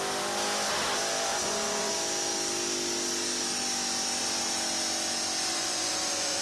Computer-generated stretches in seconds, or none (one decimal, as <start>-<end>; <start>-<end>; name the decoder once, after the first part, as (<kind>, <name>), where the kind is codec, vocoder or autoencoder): 1.3-1.9 (vocoder, Vocos); 5.5-6.4